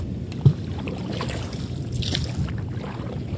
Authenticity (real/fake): real